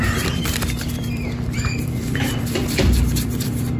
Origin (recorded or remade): remade